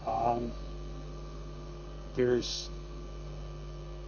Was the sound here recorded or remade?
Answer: remade